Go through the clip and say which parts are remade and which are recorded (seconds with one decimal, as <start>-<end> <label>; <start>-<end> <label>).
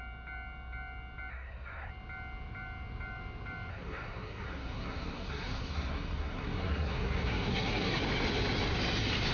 0.0-1.3 recorded; 1.3-1.9 remade; 1.9-3.7 recorded; 3.7-8.0 remade; 8.0-9.3 recorded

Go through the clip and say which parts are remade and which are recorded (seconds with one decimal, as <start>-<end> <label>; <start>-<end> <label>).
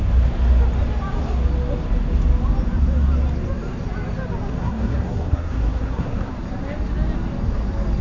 0.0-4.6 recorded; 4.6-6.3 remade; 6.3-8.0 recorded